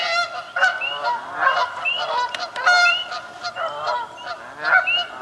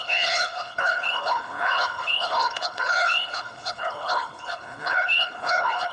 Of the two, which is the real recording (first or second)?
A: first